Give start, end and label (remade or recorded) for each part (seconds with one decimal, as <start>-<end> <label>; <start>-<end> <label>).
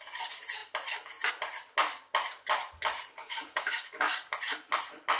0.0-3.2 recorded; 3.2-4.1 remade; 4.1-5.2 recorded